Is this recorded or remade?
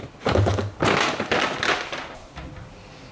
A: recorded